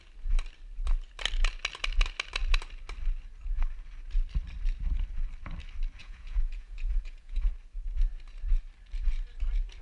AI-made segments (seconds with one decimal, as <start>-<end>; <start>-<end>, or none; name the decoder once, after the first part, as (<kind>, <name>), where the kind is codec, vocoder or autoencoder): 6.0-7.5 (vocoder, Vocos)